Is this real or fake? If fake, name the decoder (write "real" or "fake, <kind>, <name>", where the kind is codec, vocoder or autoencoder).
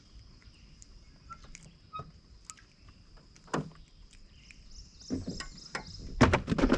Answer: real